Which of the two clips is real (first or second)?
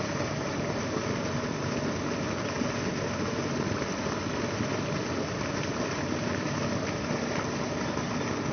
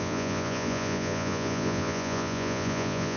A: first